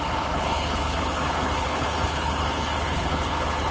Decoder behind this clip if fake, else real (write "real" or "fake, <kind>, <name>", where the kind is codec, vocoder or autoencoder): fake, codec, HILCodec